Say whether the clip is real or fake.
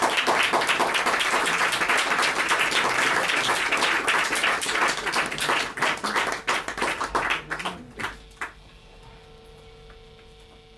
real